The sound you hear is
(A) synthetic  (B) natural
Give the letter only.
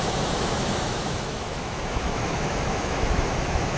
A